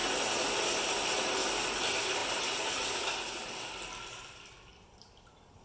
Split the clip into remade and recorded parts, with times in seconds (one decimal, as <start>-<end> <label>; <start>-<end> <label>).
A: 0.0-5.6 recorded